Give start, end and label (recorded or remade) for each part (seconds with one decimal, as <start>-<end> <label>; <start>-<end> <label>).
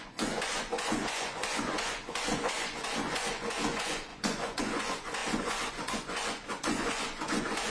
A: 0.0-7.7 remade